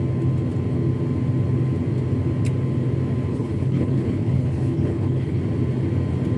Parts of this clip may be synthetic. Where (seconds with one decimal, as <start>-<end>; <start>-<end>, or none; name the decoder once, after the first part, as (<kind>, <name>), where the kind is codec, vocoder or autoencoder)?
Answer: 3.3-5.4 (codec, HILCodec)